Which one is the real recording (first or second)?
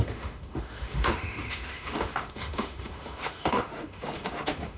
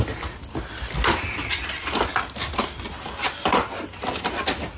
second